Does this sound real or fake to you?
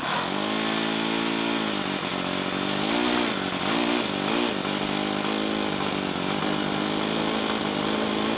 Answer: real